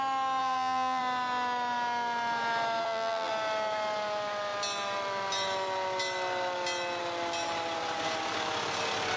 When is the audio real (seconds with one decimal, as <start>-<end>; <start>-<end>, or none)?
0.0-0.4; 1.0-2.8; 3.3-9.2